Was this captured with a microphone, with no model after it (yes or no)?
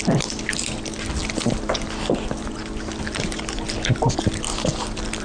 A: yes